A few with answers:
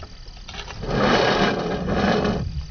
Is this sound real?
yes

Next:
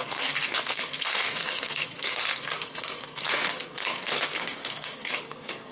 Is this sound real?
no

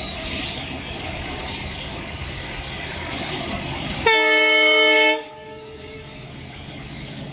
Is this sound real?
no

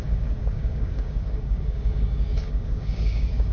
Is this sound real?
no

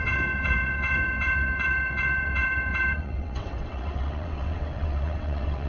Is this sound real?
no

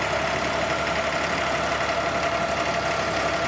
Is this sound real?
yes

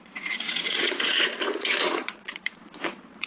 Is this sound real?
no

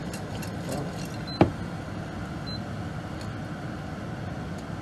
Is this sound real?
yes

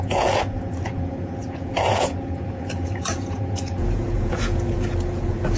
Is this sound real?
no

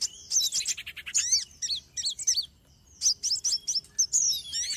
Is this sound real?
yes